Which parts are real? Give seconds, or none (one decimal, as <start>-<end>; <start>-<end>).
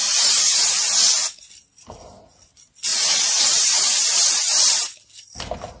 0.6-2.9; 3.4-5.8